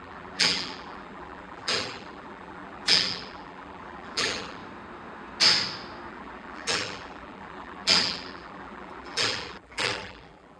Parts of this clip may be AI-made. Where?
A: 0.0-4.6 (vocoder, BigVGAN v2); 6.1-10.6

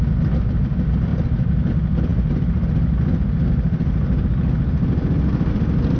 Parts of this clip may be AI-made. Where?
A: none

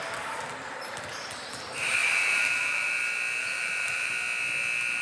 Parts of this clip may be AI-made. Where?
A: 2.0-3.0 (vocoder, BigVGAN v2); 3.4-4.1

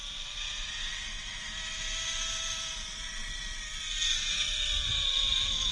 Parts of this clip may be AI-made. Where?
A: none

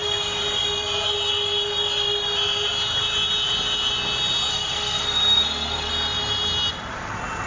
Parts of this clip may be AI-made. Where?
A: 4.5-5.9 (codec, SNAC)

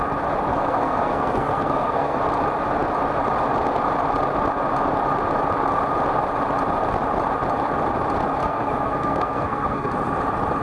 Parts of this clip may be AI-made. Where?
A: 0.5-2.2 (codec, SNAC); 8.4-9.9

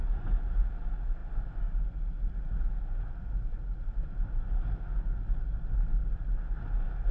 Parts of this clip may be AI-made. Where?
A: 0.0-0.6 (vocoder, BigVGAN v2)

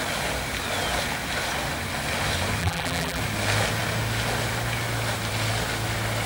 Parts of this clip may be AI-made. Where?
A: 2.6-3.2 (vocoder, BigVGAN v2)